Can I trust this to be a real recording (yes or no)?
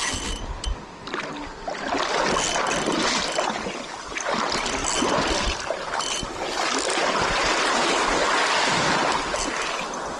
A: yes